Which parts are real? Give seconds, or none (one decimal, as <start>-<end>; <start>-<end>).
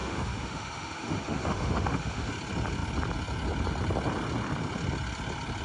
2.3-5.6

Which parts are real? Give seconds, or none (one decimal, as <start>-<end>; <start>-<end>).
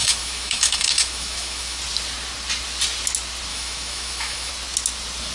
1.8-3.5; 4.5-5.3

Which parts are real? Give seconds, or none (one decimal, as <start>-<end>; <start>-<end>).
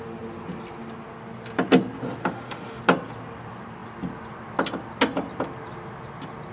0.0-2.2; 2.8-6.5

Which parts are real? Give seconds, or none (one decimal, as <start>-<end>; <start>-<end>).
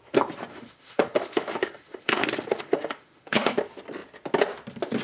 0.0-0.5; 3.5-5.0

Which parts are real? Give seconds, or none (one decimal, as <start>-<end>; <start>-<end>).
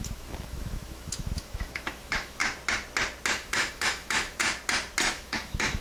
2.4-3.3; 4.4-5.1